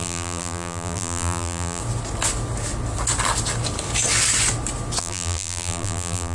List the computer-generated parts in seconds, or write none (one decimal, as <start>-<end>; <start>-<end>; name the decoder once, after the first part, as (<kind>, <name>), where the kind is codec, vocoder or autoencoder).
0.0-1.8 (vocoder, BigVGAN v2); 5.0-6.3